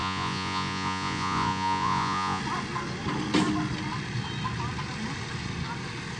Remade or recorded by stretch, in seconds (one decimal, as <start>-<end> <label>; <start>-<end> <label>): 0.0-2.4 remade; 2.4-6.2 recorded